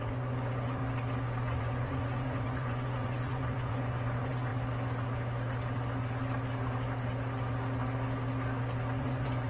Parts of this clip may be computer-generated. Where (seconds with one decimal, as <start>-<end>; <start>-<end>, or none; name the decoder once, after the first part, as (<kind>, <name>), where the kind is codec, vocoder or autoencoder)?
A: 0.0-0.8 (vocoder, Vocos); 1.4-4.5; 9.0-9.5